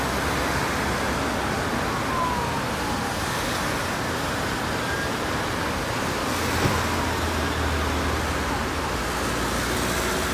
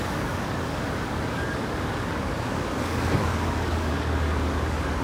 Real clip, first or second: first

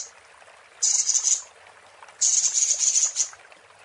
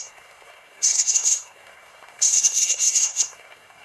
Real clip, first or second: first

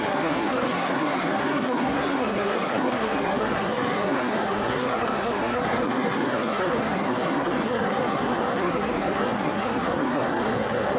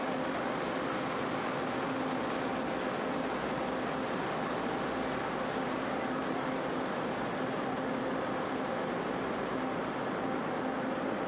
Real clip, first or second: second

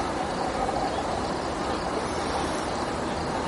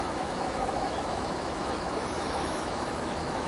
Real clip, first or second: first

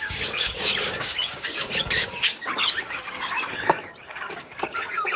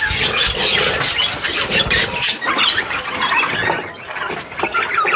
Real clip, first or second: second